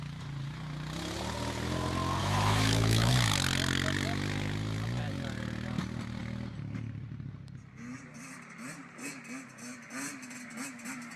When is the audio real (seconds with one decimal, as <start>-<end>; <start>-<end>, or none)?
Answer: 0.0-2.2; 3.1-11.2